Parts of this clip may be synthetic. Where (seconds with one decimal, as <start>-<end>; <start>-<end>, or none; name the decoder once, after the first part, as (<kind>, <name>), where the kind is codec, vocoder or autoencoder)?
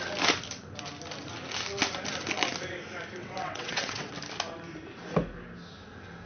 3.2-4.1 (vocoder, WaveNeXt)